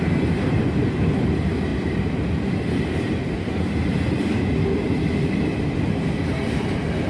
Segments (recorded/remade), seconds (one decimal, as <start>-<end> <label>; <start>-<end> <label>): 0.0-1.7 recorded; 1.7-2.4 remade; 2.4-3.2 recorded; 3.2-4.4 remade; 4.4-7.1 recorded